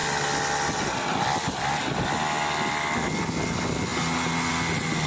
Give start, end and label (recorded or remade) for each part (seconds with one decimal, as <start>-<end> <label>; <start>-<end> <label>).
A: 0.0-5.1 recorded